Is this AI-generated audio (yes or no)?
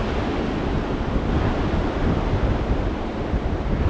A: no